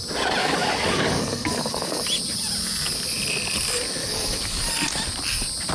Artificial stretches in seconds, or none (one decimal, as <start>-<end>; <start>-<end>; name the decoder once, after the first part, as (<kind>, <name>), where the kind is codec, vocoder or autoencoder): 0.4-2.0 (codec, DAC); 4.0-4.6